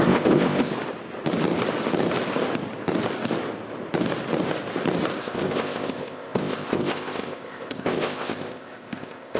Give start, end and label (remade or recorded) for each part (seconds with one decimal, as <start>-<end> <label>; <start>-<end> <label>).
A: 0.0-0.7 remade; 0.7-5.2 recorded; 5.2-9.4 remade

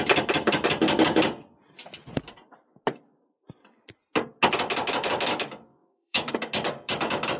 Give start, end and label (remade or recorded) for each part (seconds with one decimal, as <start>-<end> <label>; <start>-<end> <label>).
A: 0.0-5.8 recorded; 5.8-6.3 remade; 6.3-7.4 recorded